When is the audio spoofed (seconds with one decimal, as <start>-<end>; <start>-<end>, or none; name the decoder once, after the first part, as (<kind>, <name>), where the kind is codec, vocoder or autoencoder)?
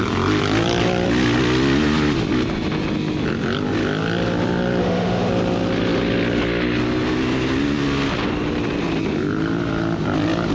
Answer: 4.8-5.3 (autoencoder, DAC-VAE)